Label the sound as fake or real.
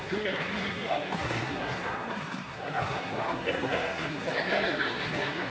fake